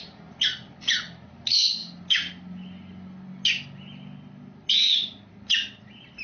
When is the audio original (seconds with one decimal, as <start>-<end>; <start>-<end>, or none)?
0.0-6.2